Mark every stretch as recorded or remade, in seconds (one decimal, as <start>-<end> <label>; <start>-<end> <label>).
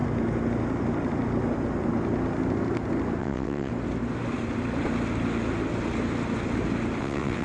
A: 0.0-3.2 recorded; 3.2-3.7 remade; 3.7-7.0 recorded; 7.0-7.4 remade